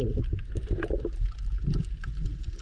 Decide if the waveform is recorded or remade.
remade